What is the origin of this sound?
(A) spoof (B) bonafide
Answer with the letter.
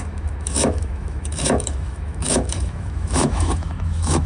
A